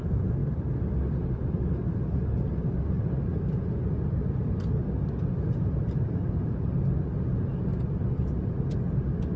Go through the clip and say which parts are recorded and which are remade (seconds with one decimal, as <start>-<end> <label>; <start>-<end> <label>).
0.0-9.4 recorded